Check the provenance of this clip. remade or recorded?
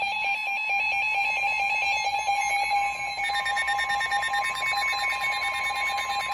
recorded